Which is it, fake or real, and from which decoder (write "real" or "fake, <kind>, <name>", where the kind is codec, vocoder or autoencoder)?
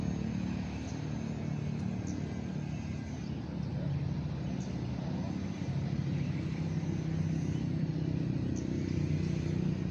real